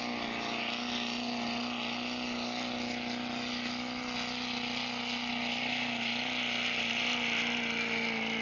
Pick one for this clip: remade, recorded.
recorded